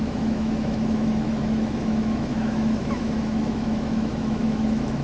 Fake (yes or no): yes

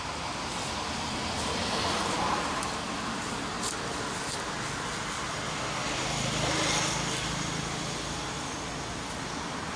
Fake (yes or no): no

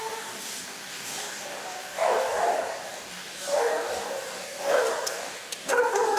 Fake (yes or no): yes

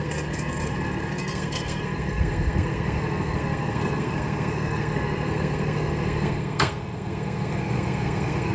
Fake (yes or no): yes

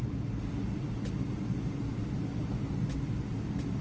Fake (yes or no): no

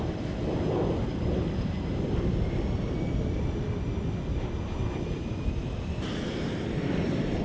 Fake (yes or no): no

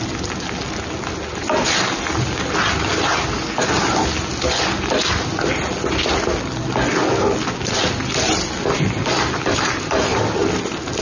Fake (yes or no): no